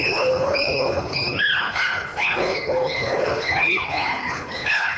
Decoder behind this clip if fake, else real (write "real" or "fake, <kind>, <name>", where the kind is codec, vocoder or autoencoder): fake, codec, HILCodec